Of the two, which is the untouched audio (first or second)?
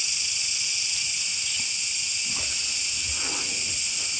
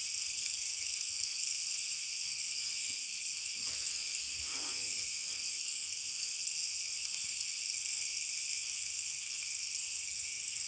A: first